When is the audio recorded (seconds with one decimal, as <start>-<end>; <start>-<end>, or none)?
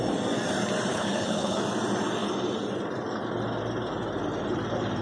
0.0-0.9; 1.6-5.0